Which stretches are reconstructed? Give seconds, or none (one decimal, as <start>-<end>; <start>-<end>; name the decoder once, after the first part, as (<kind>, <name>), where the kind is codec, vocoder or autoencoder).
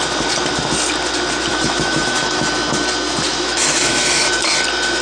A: 1.5-2.4 (autoencoder, DAC-VAE); 3.3-4.5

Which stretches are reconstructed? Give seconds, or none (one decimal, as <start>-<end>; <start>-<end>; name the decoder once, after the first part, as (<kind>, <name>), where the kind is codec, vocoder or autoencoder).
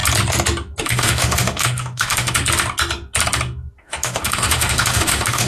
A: 0.8-2.4 (autoencoder, DAC-VAE); 3.8-5.5